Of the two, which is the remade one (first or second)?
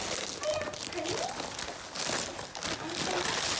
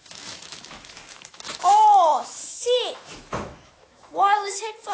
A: second